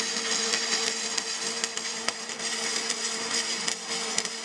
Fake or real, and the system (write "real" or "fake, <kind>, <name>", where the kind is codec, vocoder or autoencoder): fake, vocoder, BigVGAN v2